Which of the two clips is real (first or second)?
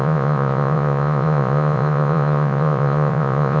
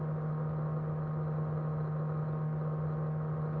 second